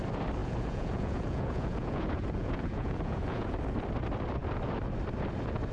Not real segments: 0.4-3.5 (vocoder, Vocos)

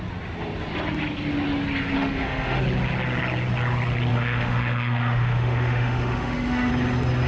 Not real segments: 2.0-2.6 (autoencoder, DAC-VAE); 4.1-6.7